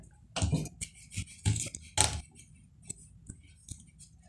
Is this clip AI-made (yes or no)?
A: no